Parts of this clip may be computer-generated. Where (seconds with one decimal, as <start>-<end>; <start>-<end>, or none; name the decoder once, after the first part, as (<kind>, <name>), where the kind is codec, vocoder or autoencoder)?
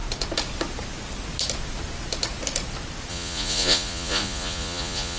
3.1-5.2 (vocoder, Vocos)